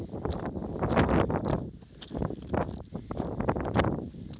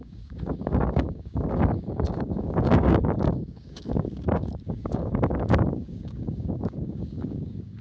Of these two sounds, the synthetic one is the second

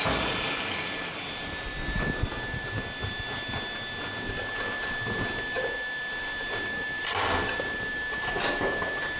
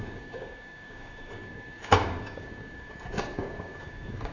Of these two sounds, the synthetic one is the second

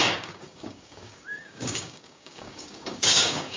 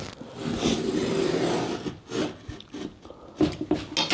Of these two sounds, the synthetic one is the first